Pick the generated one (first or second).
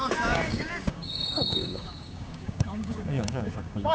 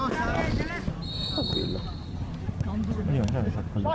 first